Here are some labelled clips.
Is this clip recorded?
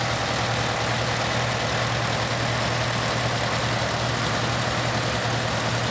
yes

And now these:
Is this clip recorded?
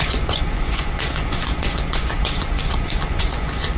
no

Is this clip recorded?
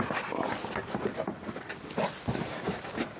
yes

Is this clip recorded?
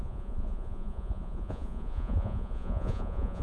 no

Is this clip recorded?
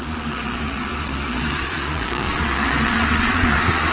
no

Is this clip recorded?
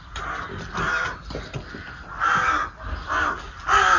yes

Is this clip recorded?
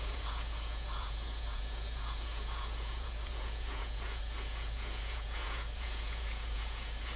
no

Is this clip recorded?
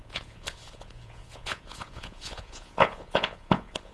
no